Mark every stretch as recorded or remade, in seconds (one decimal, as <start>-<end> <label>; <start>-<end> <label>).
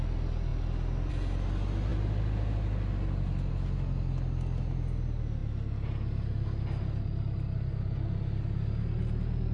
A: 0.0-9.5 recorded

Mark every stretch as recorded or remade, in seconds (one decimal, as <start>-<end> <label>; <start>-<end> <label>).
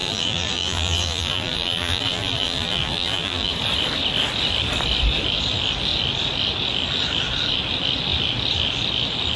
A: 0.0-3.5 remade; 3.5-9.4 recorded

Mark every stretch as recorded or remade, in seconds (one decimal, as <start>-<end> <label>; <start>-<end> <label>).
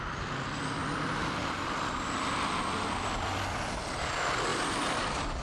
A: 0.0-4.5 recorded; 4.5-5.0 remade; 5.0-5.4 recorded